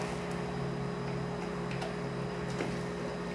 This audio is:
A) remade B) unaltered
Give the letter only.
B